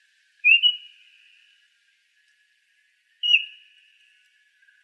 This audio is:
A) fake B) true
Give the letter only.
B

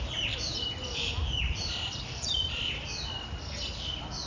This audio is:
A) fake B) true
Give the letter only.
A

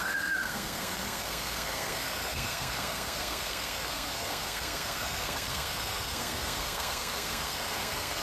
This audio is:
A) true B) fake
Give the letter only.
B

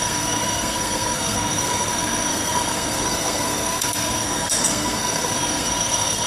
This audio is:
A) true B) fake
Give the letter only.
B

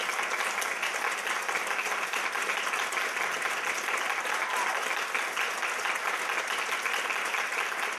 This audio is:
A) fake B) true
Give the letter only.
B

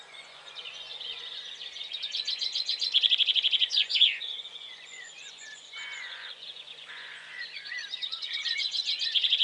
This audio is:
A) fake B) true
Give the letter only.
A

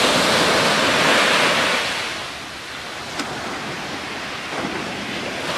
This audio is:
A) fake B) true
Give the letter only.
B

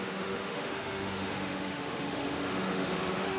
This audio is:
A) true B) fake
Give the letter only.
B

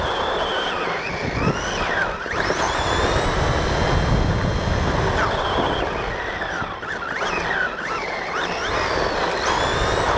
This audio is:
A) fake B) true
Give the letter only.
B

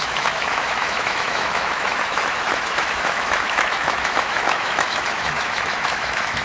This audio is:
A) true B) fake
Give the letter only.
B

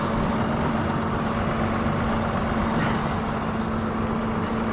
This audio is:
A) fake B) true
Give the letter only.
B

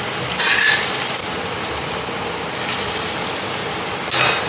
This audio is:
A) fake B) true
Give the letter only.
B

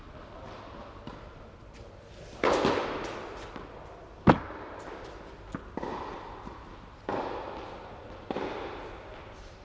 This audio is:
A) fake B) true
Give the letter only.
A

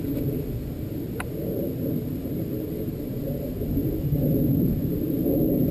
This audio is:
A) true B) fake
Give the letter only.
A